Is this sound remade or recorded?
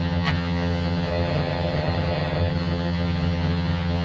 remade